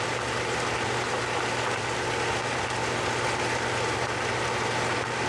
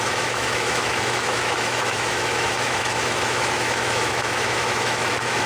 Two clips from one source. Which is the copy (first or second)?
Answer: second